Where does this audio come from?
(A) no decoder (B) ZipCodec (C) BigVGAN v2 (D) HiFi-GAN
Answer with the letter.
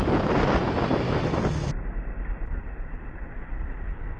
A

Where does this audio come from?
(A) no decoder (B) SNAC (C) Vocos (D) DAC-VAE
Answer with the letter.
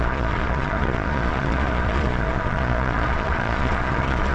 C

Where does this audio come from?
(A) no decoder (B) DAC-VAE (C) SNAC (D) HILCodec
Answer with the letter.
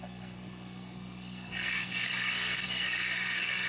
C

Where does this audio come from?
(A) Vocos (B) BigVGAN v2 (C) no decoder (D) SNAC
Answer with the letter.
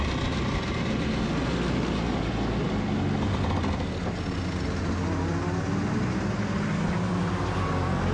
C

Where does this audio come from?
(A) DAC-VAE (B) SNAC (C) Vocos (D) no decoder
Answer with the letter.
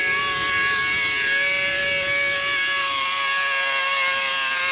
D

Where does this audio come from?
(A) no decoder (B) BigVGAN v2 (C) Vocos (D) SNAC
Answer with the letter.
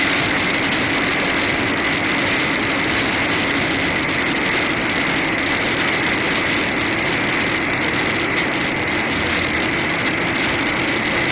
A